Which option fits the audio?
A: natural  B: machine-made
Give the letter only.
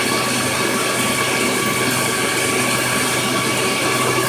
A